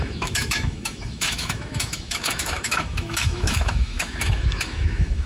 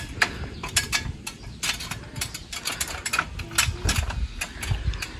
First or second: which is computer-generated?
first